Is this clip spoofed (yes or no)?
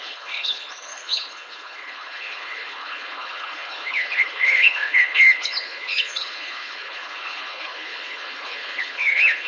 yes